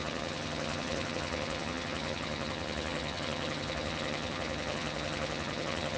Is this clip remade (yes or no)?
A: yes